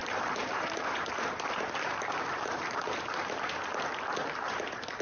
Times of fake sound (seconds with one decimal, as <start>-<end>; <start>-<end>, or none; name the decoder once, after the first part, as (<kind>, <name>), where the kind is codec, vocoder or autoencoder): 0.0-3.0 (vocoder, BigVGAN v2); 4.2-5.0